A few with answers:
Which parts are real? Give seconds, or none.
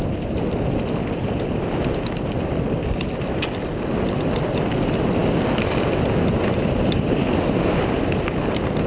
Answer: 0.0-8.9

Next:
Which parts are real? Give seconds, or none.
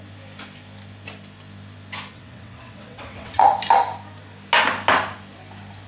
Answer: 0.0-2.1; 3.6-5.9